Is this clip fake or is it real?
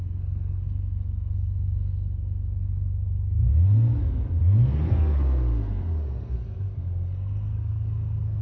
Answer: fake